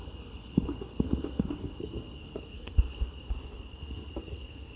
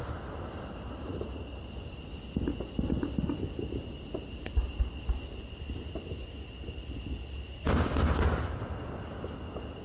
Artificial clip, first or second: first